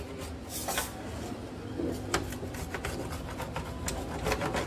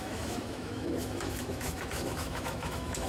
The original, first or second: first